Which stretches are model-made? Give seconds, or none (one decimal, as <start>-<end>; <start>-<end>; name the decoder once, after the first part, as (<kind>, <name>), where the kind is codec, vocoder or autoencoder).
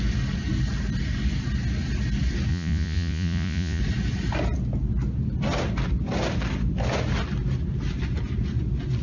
2.5-3.8 (vocoder, Vocos)